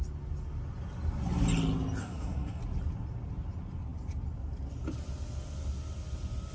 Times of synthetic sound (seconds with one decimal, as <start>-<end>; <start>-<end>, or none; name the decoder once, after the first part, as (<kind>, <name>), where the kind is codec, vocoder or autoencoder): 2.0-2.6 (codec, SNAC)